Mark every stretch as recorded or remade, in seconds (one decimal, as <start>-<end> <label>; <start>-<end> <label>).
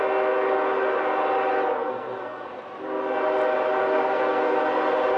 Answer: 0.0-1.8 recorded; 1.8-2.6 remade; 2.6-3.8 recorded; 3.8-4.6 remade; 4.6-5.2 recorded